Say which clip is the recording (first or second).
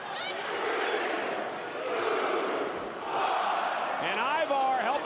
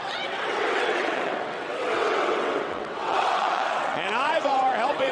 first